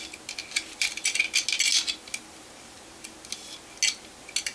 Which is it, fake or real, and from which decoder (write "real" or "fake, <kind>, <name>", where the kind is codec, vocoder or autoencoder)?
real